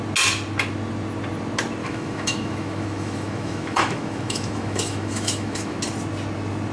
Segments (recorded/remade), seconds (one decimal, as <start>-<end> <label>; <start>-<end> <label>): 0.0-1.8 recorded; 1.8-5.8 remade; 5.8-6.7 recorded